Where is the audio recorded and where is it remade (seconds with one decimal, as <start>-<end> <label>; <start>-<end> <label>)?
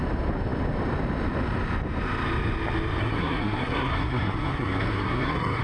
0.0-3.0 recorded; 3.0-5.6 remade